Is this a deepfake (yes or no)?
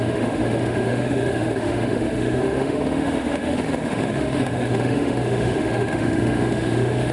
yes